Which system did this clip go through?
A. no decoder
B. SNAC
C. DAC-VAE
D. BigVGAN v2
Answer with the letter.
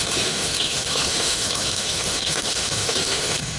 C